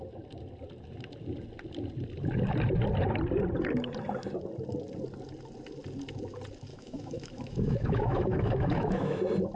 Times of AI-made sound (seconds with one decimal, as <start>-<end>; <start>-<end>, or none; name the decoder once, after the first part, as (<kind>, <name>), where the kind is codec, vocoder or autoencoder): 6.7-9.2 (autoencoder, DAC-VAE)